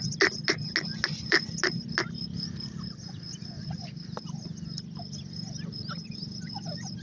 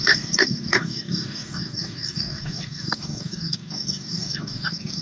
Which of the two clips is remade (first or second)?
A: second